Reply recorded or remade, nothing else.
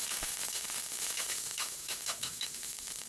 remade